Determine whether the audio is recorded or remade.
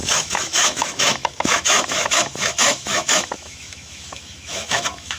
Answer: remade